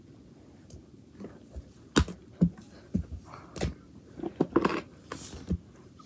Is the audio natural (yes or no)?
yes